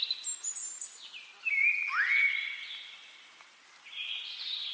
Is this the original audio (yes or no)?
yes